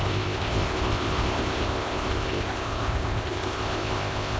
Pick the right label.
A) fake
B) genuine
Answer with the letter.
A